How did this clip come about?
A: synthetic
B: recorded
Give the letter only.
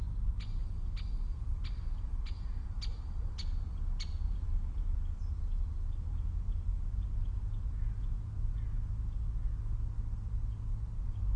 B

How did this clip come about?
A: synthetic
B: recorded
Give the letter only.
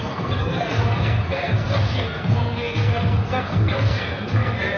A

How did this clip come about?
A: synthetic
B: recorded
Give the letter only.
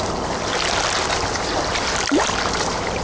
B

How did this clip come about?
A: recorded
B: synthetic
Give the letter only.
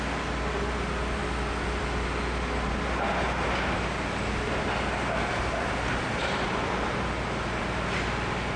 A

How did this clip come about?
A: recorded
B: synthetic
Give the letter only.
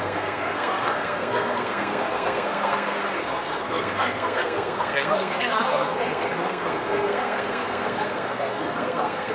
B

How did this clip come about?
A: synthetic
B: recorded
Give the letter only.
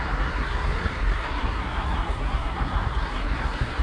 A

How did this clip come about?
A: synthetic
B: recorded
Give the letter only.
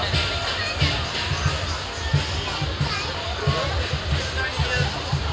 B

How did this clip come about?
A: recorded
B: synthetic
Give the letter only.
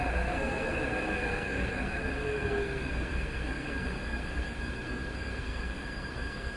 B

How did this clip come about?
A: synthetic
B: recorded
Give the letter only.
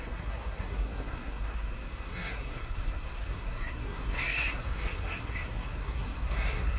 A